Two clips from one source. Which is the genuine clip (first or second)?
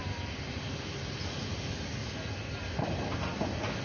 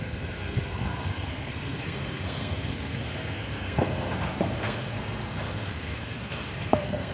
first